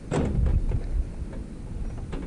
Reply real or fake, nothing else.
real